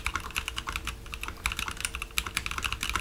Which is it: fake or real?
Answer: real